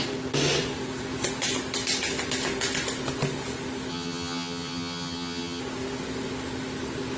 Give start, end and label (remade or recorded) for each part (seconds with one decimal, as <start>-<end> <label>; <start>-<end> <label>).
0.0-3.9 recorded; 3.9-5.6 remade; 5.6-7.2 recorded